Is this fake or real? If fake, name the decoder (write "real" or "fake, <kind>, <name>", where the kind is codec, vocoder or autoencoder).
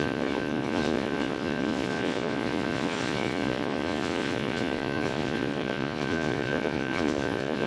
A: fake, vocoder, Vocos